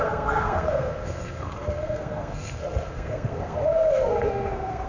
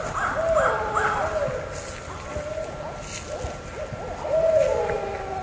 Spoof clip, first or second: first